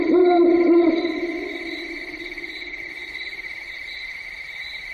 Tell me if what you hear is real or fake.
fake